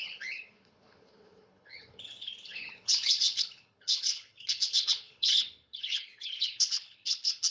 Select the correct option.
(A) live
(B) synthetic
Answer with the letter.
B